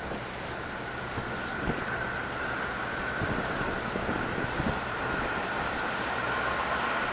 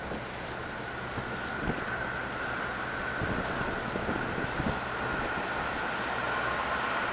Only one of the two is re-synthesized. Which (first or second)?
first